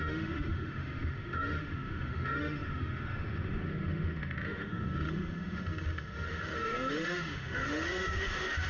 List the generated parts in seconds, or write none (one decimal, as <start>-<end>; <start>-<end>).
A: 0.0-8.7